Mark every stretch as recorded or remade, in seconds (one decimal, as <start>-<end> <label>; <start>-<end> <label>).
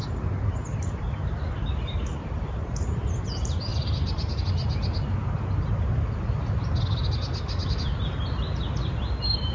0.0-0.7 recorded; 0.7-3.1 remade; 3.1-3.7 recorded; 3.7-4.4 remade; 4.4-9.5 recorded